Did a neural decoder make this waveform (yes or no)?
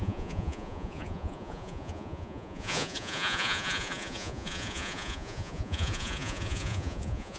yes